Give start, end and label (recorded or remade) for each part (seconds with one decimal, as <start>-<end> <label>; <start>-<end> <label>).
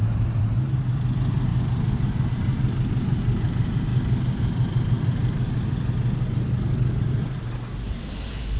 0.0-1.5 remade; 1.5-2.3 recorded; 2.3-3.9 remade; 3.9-7.0 recorded; 7.0-8.6 remade